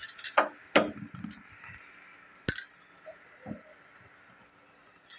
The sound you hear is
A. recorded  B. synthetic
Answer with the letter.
A